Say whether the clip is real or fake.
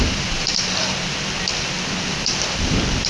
fake